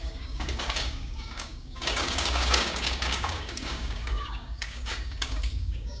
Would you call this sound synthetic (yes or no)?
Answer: yes